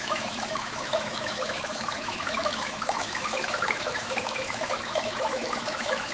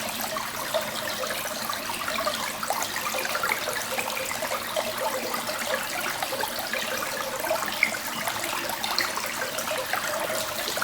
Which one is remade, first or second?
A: first